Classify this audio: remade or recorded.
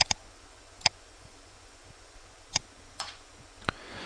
remade